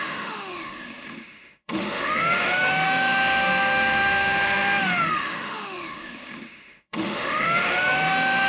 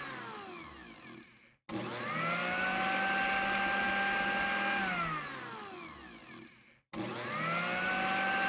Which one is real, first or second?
second